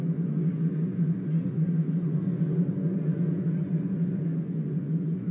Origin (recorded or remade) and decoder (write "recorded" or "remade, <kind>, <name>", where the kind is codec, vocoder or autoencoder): remade, vocoder, Vocos